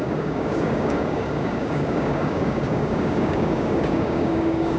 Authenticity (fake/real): fake